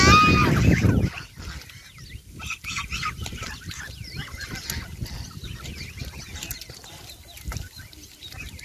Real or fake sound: real